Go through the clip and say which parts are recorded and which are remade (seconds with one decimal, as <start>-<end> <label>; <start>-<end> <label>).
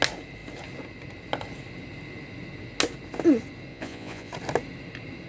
0.0-3.7 recorded; 3.7-4.3 remade; 4.3-5.3 recorded